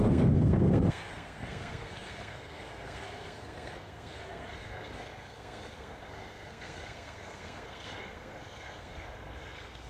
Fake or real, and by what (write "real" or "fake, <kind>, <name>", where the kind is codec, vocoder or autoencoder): fake, codec, SNAC